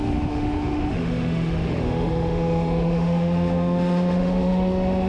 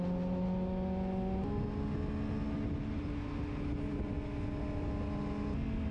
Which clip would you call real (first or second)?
second